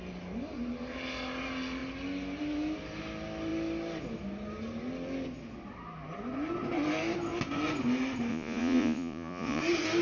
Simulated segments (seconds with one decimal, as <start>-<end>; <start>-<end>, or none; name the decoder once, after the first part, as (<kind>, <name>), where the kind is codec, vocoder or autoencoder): 8.3-9.6 (vocoder, Vocos)